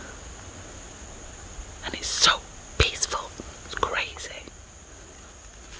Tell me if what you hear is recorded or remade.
recorded